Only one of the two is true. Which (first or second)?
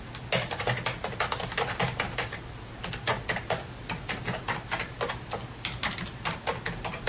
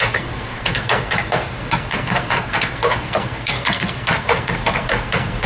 first